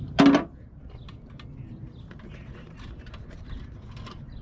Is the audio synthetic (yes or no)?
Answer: no